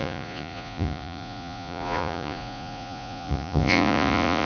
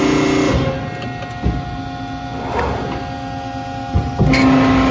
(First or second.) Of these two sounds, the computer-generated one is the first